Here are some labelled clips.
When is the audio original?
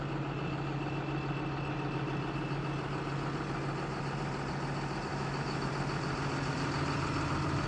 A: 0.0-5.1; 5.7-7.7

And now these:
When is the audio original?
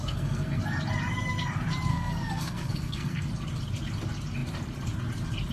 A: 0.6-1.9; 3.3-5.5